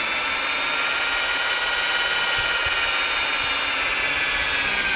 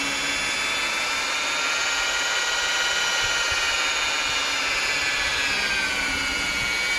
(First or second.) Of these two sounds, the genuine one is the second